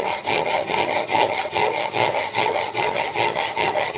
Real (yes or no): no